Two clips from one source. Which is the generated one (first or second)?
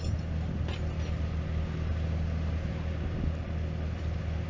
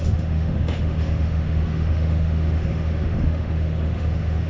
second